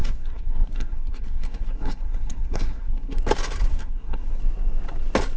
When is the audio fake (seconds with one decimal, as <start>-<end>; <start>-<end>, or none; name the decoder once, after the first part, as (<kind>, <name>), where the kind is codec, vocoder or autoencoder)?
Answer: 0.0-3.2 (codec, SNAC); 3.7-4.4